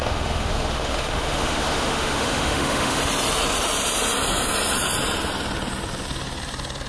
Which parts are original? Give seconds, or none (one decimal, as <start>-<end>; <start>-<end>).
3.0-6.9